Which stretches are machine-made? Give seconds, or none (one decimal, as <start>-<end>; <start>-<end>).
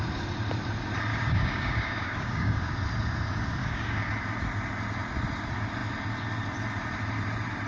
1.1-2.7; 3.6-4.1